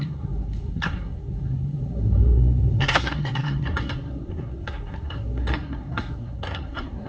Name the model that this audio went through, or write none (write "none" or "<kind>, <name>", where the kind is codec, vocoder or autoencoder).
codec, SNAC